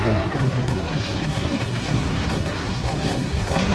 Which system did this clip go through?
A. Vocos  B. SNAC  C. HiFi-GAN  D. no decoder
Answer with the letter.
B